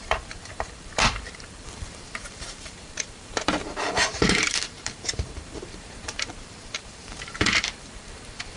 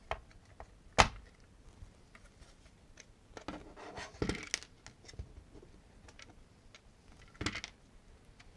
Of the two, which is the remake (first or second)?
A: first